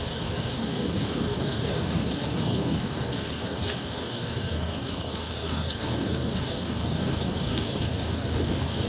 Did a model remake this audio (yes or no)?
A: yes